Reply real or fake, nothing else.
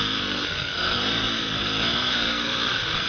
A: fake